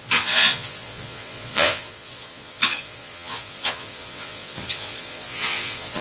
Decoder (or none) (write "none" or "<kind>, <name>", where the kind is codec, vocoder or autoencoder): vocoder, Vocos